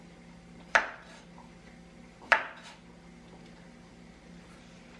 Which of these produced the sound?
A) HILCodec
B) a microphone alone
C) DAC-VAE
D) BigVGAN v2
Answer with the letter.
B